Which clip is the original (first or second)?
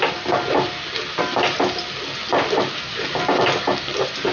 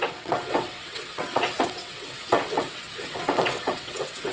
first